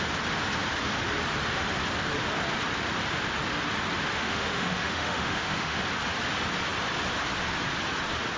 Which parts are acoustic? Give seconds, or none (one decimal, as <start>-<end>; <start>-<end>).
0.0-4.1; 5.8-8.4